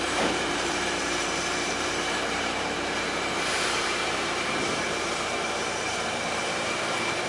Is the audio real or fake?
fake